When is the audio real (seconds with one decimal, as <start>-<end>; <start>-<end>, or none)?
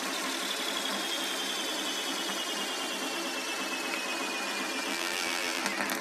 0.0-4.9; 5.6-6.0